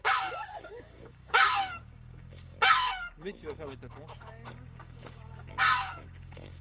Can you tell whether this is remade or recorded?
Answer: remade